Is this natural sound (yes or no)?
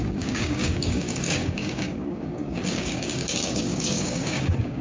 no